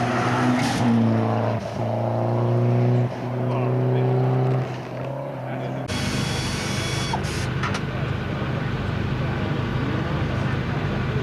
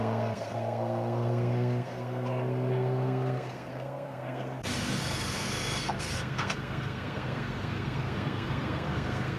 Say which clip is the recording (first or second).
first